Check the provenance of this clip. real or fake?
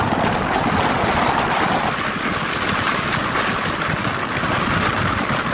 real